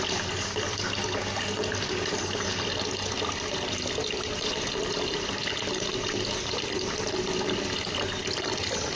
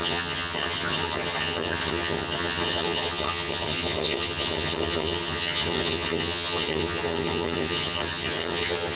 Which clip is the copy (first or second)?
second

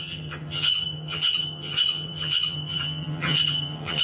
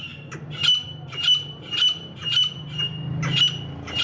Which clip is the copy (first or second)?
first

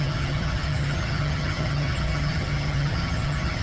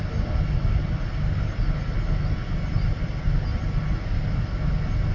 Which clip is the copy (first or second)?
first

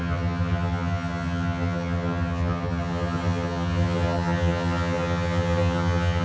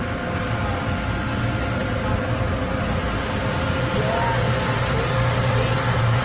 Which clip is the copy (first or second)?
first